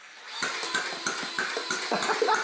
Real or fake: real